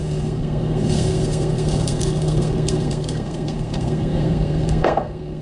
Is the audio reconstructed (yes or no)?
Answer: yes